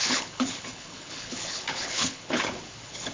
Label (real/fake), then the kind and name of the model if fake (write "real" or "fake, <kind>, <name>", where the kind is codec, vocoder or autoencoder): fake, codec, HILCodec